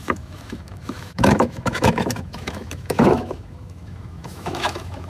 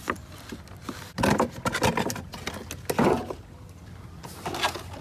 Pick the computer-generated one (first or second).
first